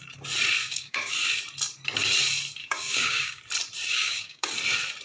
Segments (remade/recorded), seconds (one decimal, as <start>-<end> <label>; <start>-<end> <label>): 0.0-0.6 recorded; 0.6-1.1 remade; 1.1-2.6 recorded; 2.6-3.4 remade; 3.4-3.9 recorded; 3.9-4.5 remade; 4.5-5.0 recorded

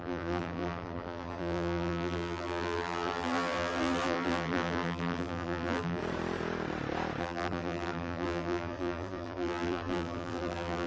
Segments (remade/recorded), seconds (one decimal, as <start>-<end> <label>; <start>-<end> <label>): 0.0-6.0 remade; 6.0-7.2 recorded; 7.2-10.9 remade

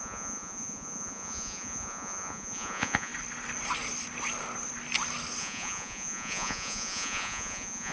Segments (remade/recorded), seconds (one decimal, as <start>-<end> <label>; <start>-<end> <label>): 0.0-3.1 remade; 3.1-5.4 recorded; 5.4-7.9 remade

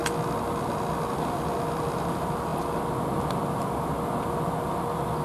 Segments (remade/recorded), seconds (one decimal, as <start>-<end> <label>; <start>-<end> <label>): 0.0-5.2 recorded

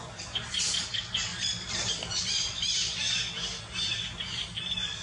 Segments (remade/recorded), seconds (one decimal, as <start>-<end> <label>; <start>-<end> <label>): 0.0-1.3 recorded; 1.3-3.6 remade; 3.6-5.0 recorded

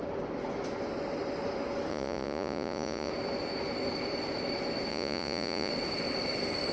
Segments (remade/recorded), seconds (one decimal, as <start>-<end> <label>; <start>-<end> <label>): 0.0-1.9 recorded; 1.9-3.1 remade; 3.1-4.9 recorded; 4.9-5.7 remade; 5.7-6.7 recorded

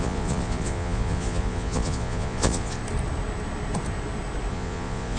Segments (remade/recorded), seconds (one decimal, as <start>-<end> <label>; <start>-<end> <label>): 0.0-2.8 remade; 2.8-4.5 recorded; 4.5-5.2 remade